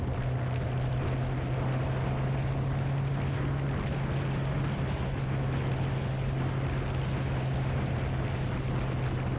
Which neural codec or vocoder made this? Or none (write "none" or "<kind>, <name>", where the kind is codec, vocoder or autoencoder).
none